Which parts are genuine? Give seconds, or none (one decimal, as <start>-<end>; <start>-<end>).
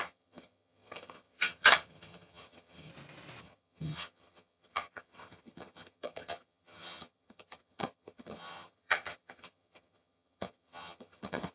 2.9-3.4